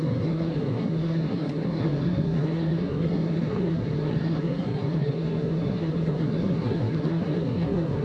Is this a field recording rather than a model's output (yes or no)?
no